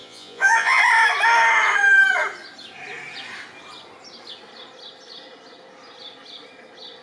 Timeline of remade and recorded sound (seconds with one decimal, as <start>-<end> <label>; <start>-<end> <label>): 0.0-0.8 remade; 0.8-7.0 recorded